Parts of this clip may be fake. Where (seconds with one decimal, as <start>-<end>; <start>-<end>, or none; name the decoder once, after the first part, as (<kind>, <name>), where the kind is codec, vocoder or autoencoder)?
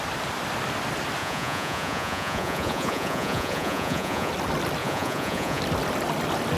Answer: 1.2-4.3 (vocoder, Vocos); 4.8-5.6